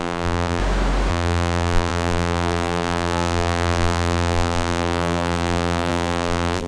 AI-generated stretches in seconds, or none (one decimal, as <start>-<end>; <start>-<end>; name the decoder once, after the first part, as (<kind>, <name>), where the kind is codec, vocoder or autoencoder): 0.0-0.6 (vocoder, BigVGAN v2); 1.1-6.7